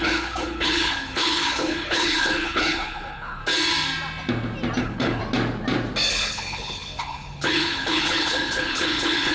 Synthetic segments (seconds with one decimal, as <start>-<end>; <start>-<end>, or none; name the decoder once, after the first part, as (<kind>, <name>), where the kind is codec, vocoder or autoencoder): 0.0-3.4 (codec, HILCodec); 4.8-5.2; 6.1-9.3